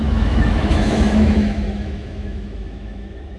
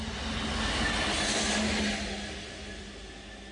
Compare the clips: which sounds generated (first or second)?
first